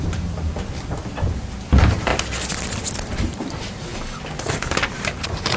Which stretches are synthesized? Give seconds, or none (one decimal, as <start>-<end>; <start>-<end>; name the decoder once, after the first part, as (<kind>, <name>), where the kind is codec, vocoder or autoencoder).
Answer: 0.0-0.5 (vocoder, BigVGAN v2); 1.4-2.1; 3.1-3.9; 5.0-5.6